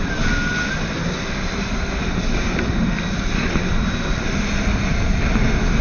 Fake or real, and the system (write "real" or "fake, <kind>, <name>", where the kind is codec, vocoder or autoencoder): real